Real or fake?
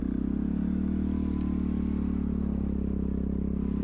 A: real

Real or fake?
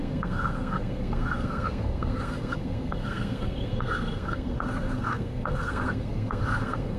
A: fake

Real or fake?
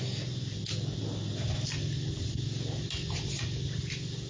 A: real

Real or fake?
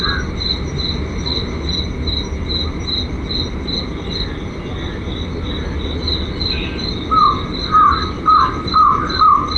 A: real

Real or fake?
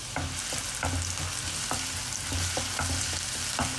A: real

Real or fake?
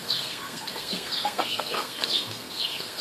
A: fake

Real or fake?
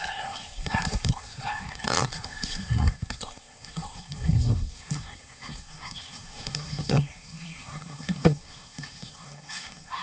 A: fake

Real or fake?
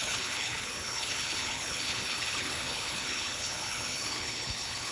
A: fake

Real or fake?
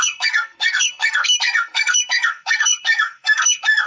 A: fake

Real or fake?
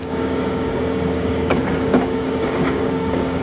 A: fake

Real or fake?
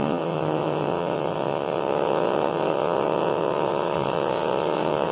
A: fake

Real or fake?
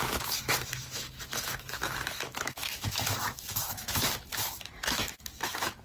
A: fake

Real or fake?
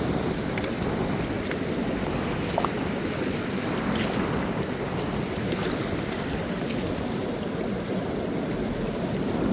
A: real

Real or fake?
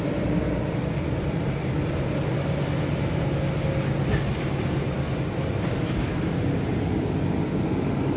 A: real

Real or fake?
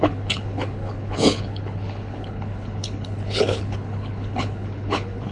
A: fake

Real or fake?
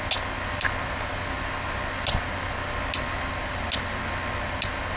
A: real